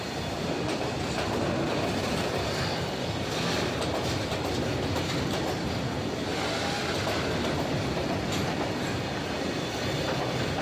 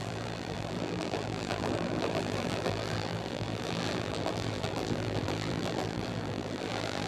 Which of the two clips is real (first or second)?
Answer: first